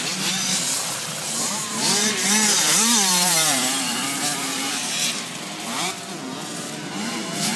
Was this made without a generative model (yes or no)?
no